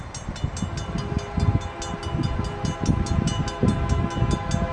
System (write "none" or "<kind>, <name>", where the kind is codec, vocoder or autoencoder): none